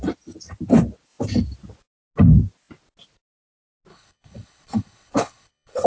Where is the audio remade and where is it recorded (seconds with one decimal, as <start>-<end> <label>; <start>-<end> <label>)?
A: 0.0-3.9 recorded; 3.9-5.9 remade